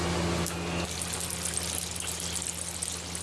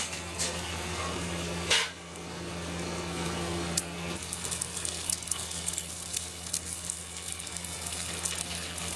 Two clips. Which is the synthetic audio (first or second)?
second